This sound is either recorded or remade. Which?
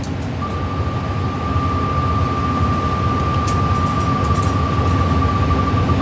recorded